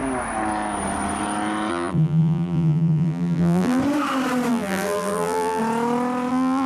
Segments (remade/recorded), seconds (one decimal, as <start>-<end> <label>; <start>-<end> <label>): 0.0-1.7 recorded; 1.7-3.8 remade; 3.8-4.5 recorded; 4.5-5.6 remade; 5.6-6.3 recorded; 6.3-6.7 remade

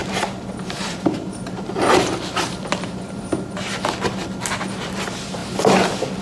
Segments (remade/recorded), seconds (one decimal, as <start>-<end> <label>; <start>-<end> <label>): 0.0-3.7 remade; 3.7-5.4 recorded; 5.4-6.2 remade